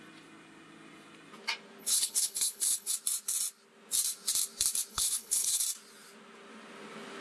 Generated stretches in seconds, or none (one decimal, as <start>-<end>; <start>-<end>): 1.8-2.9; 4.9-5.6